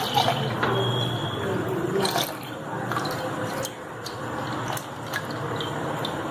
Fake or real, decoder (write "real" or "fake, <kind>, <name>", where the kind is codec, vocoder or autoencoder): real